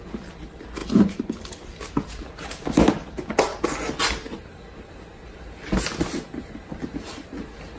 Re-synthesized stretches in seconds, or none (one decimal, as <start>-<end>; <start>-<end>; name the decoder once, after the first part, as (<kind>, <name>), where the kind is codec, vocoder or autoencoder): none